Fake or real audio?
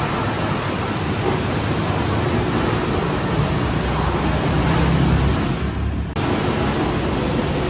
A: real